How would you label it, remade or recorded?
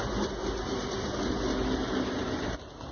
recorded